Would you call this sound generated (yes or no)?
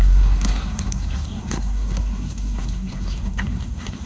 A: yes